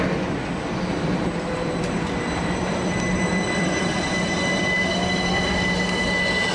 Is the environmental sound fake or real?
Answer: real